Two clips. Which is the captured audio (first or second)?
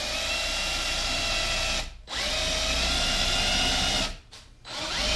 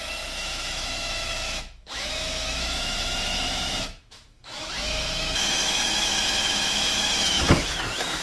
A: first